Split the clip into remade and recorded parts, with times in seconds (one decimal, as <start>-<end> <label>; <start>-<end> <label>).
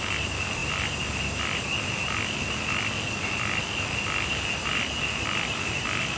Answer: 0.0-6.2 recorded